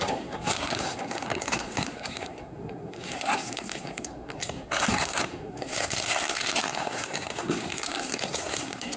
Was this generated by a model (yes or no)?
yes